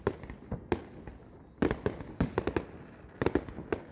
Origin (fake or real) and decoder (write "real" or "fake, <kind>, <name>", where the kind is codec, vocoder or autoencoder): real